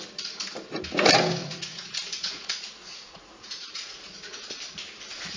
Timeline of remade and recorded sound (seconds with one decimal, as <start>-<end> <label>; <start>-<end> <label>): 0.0-1.4 recorded; 1.4-4.4 remade; 4.4-5.4 recorded